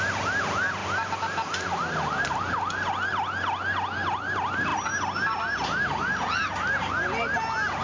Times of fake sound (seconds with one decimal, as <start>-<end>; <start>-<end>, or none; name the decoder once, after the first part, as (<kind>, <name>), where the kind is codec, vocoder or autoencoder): none